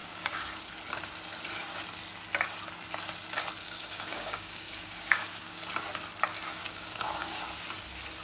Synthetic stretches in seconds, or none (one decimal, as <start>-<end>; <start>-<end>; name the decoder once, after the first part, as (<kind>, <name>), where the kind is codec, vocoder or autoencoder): 0.0-0.5 (codec, DAC); 3.6-5.6; 6.5-7.4